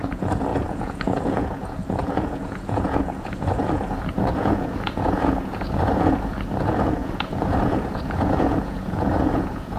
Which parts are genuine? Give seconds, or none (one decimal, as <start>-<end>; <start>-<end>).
none